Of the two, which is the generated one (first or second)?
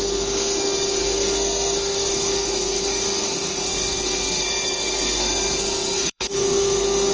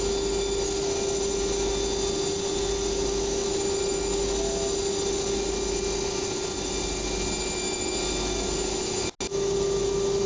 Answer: first